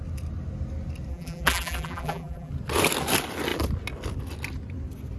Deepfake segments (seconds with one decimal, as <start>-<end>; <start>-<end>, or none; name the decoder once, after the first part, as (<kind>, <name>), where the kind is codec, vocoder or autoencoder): 1.1-2.5 (vocoder, BigVGAN v2)

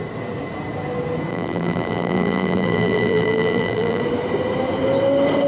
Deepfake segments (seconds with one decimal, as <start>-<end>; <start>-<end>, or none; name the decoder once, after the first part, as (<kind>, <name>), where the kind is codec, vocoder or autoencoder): 1.3-4.0 (vocoder, BigVGAN v2)

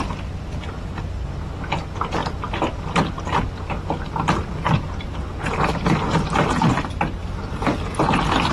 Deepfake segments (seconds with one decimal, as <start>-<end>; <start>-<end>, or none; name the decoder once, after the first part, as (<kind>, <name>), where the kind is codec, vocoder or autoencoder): none